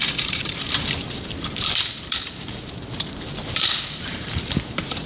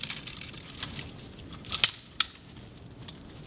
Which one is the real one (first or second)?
second